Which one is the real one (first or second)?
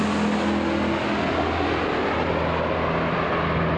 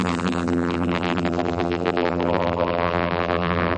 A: first